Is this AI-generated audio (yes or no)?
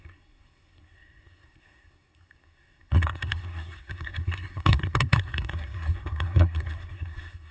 yes